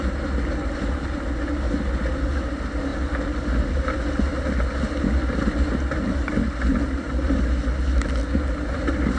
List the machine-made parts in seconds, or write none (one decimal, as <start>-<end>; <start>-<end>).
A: none